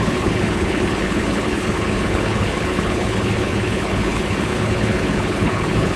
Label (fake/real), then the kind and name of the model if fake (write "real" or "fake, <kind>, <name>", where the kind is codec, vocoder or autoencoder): fake, codec, HILCodec